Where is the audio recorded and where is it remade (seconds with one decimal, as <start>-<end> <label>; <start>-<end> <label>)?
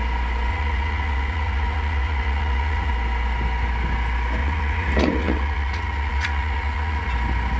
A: 0.0-0.5 recorded; 0.5-2.9 remade; 2.9-4.4 recorded; 4.4-7.1 remade; 7.1-7.6 recorded